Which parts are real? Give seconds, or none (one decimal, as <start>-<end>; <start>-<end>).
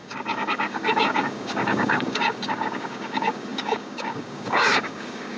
none